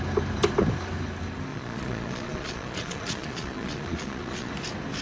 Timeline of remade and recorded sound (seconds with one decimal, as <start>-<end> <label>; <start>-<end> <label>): 0.0-1.5 recorded; 1.5-4.5 remade; 4.5-5.0 recorded